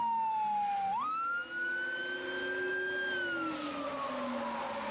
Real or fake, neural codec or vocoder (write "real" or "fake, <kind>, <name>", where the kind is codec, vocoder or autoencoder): real